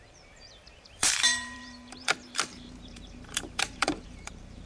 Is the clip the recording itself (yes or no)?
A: no